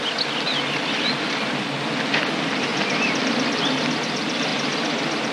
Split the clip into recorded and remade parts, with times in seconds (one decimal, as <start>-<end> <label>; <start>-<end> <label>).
0.0-5.3 recorded